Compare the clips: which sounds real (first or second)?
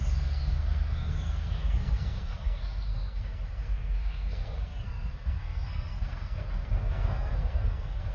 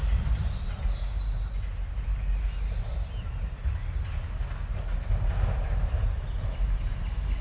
second